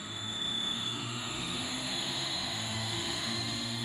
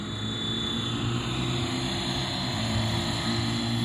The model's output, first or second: first